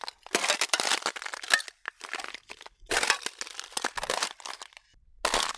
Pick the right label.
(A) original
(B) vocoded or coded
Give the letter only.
A